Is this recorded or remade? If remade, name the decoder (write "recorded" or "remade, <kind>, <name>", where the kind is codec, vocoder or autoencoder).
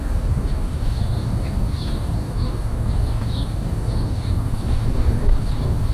remade, codec, DAC